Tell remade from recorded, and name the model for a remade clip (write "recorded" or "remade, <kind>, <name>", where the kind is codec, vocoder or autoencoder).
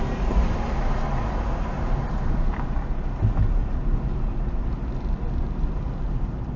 recorded